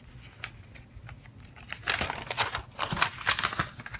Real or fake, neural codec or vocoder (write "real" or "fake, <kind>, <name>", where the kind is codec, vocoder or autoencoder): real